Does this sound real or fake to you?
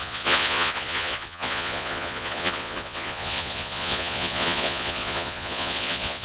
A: fake